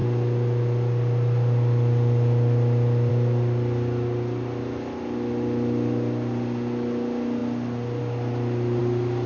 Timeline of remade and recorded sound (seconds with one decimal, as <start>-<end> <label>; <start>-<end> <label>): 0.0-9.3 recorded